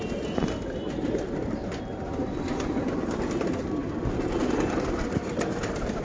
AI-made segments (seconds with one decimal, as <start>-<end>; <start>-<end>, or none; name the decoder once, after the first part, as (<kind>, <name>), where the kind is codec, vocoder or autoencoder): none

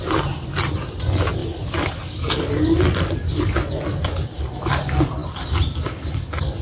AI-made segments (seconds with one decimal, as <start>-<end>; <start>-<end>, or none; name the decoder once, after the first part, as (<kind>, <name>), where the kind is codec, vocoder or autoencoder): none

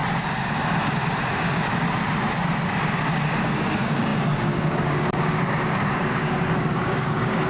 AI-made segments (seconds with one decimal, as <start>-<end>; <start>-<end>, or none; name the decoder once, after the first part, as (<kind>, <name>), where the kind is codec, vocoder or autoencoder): 3.4-7.5 (codec, DAC)

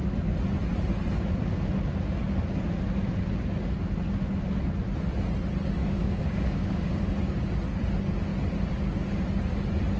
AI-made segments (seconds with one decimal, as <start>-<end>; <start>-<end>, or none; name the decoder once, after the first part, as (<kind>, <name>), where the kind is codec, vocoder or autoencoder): 5.8-7.0 (codec, DAC)

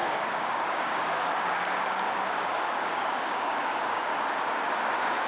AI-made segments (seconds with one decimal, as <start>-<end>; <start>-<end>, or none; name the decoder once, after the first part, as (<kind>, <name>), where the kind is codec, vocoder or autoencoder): 0.0-4.1 (codec, DAC); 4.8-5.3

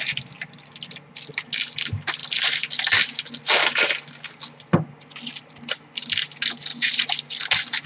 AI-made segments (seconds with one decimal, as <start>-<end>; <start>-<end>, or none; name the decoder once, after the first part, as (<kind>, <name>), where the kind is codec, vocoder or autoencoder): none

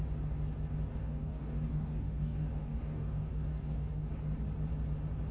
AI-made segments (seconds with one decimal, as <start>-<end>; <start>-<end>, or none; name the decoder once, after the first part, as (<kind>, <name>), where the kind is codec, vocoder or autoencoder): 0.9-4.1 (codec, DAC)